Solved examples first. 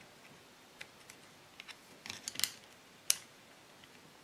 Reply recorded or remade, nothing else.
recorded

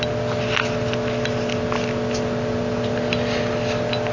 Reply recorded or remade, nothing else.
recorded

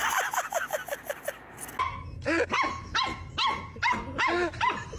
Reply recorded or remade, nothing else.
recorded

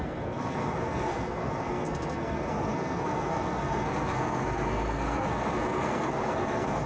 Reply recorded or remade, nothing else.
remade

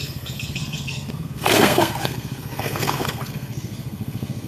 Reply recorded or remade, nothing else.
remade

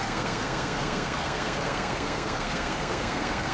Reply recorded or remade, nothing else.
remade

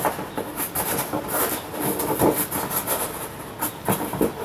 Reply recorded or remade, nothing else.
recorded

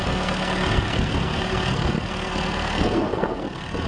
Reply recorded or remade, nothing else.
remade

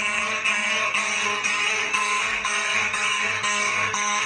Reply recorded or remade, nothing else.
remade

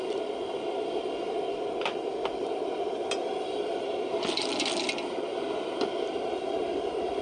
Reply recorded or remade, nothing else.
recorded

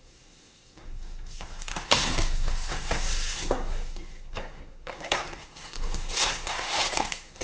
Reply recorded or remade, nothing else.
remade